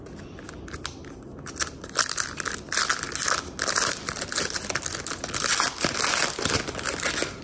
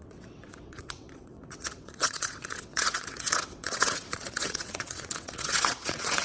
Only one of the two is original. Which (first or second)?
first